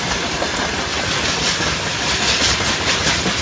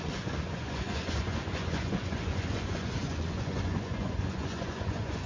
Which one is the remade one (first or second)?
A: second